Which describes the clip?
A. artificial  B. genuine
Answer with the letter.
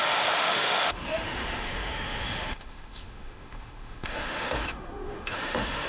A